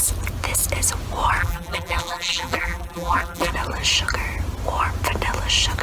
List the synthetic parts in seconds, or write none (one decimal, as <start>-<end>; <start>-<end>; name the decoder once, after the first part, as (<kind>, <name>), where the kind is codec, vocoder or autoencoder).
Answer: 1.4-3.5 (vocoder, BigVGAN v2)